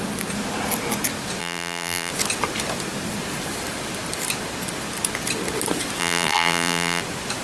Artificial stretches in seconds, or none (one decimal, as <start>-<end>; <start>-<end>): 1.4-2.1; 6.0-7.0